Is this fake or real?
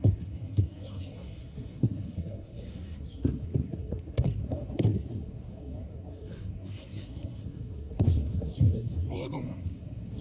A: fake